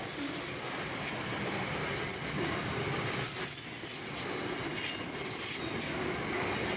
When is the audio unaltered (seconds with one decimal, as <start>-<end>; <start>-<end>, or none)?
0.0-6.8

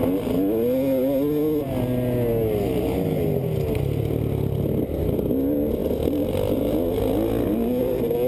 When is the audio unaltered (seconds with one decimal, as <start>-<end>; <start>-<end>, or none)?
0.0-8.3

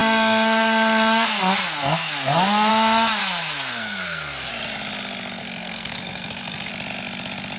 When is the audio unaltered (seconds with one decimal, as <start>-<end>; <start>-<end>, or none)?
2.7-3.2; 4.5-5.4; 6.7-7.6

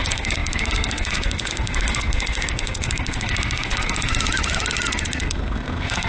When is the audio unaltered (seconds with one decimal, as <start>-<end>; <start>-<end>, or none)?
4.1-5.2

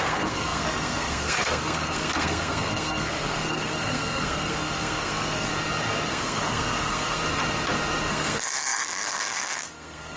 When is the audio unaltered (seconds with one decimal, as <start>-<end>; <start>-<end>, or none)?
5.5-6.1; 7.2-8.1

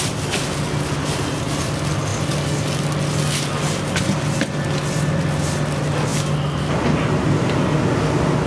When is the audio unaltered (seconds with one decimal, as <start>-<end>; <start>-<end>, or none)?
0.0-8.5

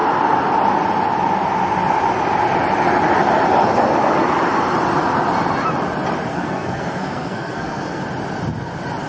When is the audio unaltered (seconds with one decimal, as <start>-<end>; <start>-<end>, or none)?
0.0-6.3; 8.0-9.1